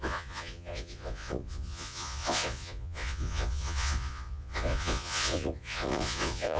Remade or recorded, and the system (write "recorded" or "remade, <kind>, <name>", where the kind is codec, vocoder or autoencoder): remade, vocoder, Vocos